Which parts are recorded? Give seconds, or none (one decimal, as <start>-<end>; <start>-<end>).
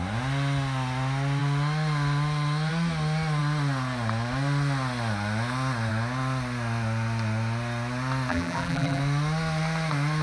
0.0-8.3; 9.0-10.2